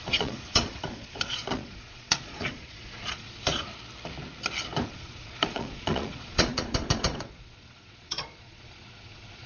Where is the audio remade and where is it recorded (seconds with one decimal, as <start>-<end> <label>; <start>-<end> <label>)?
0.0-3.7 remade; 3.7-4.9 recorded; 4.9-9.5 remade